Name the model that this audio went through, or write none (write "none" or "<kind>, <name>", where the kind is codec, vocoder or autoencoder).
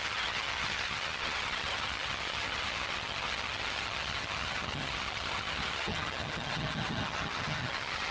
vocoder, HiFi-GAN